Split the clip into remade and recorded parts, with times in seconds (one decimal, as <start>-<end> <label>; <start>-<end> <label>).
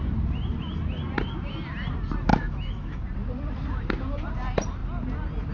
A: 0.0-2.3 recorded; 2.3-3.0 remade; 3.0-5.5 recorded